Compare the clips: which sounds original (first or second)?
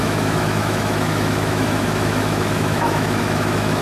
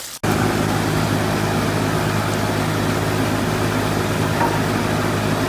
second